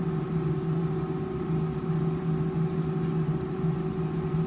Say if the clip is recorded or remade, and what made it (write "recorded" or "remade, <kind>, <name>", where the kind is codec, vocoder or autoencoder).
recorded